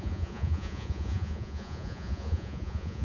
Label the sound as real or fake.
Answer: fake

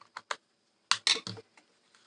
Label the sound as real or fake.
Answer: real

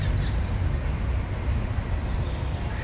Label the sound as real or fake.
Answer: real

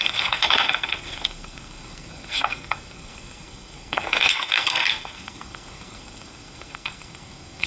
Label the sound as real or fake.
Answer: fake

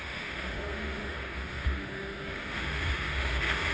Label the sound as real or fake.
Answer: fake